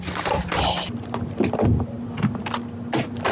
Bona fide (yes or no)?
yes